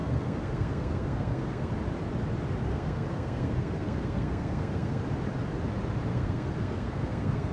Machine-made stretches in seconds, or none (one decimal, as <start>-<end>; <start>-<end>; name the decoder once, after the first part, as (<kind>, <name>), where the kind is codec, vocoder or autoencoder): 0.0-1.7 (codec, SNAC); 2.7-5.0; 6.1-7.5